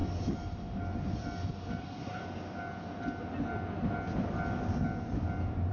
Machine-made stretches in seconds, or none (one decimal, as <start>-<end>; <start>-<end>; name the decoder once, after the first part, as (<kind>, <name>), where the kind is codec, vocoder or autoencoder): 1.8-2.2 (codec, SNAC)